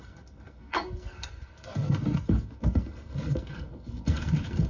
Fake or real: fake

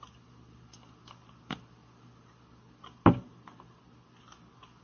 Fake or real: real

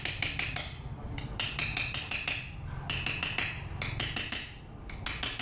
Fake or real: real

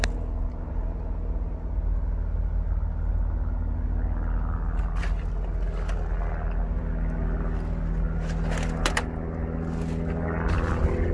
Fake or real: real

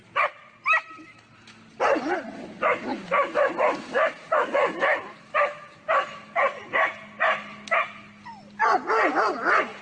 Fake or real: real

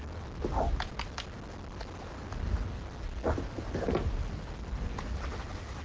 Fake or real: real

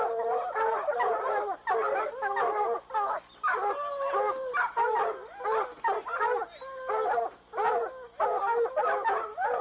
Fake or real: real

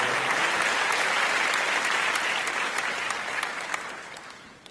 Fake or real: real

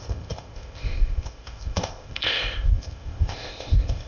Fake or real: fake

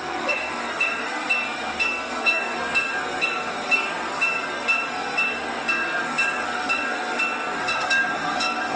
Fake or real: fake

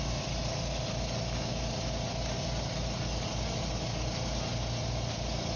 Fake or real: real